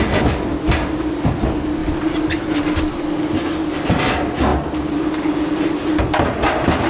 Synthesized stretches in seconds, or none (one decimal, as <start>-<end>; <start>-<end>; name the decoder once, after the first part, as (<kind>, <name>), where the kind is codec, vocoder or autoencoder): 0.5-1.1 (vocoder, BigVGAN v2); 1.8-2.8